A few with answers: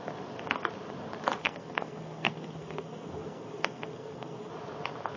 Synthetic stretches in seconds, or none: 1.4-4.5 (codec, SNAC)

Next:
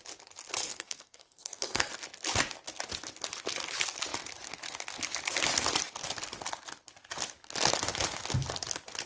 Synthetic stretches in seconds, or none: 0.6-1.9 (codec, SNAC)